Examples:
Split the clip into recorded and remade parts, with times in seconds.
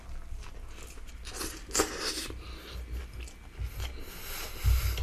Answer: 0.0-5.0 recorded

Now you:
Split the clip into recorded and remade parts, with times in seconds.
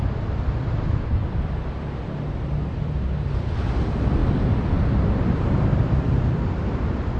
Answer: 0.0-4.2 remade; 4.2-4.8 recorded; 4.8-5.7 remade; 5.7-6.4 recorded; 6.4-7.2 remade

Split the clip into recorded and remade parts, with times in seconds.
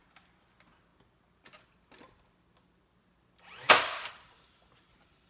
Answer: 0.0-5.3 recorded